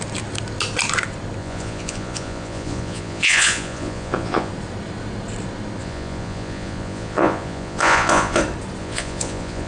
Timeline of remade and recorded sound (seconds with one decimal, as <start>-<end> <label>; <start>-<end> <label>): 0.0-1.4 recorded; 1.4-4.5 remade; 4.5-5.8 recorded; 5.8-8.4 remade; 8.4-8.8 recorded; 8.8-9.7 remade